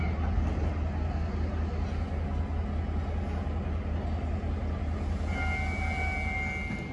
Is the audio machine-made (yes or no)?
no